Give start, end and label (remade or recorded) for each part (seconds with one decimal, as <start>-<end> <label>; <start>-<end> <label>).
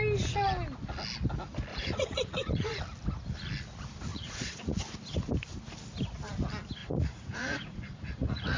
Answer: 0.0-1.7 recorded; 1.7-2.8 remade; 2.8-4.1 recorded; 4.1-4.8 remade; 4.8-6.8 recorded; 6.8-8.6 remade